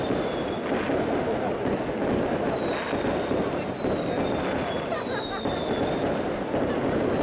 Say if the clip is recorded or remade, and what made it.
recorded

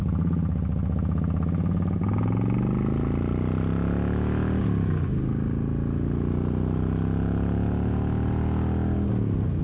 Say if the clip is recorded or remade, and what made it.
recorded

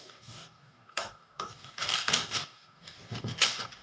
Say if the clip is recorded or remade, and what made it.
remade, codec, DAC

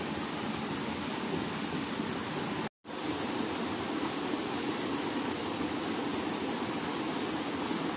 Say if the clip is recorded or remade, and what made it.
recorded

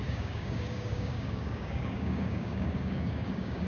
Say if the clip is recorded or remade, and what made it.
remade, codec, DAC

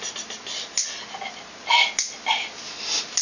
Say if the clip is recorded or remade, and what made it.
recorded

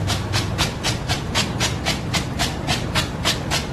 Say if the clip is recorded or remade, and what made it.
recorded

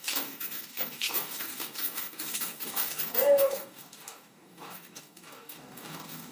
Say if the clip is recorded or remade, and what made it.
remade, codec, DAC